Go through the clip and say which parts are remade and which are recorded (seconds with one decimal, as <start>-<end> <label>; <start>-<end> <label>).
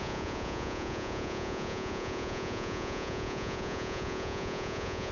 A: 0.0-5.1 remade